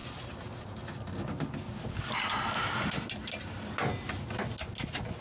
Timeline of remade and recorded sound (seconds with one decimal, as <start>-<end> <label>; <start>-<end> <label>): 0.0-5.2 recorded